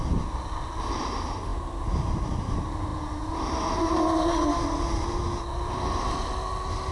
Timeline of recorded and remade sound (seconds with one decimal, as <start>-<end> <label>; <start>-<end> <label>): 0.0-6.9 recorded